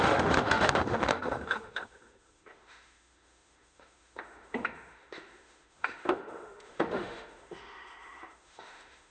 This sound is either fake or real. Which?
fake